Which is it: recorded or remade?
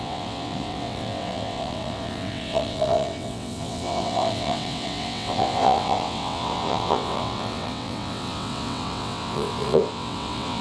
remade